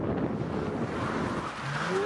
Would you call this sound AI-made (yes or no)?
no